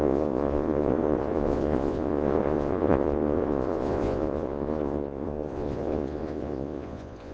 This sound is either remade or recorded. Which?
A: remade